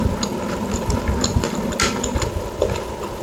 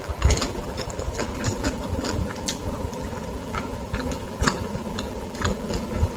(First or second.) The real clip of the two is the first